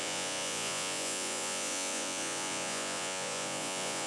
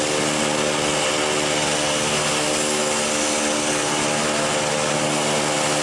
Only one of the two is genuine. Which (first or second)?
second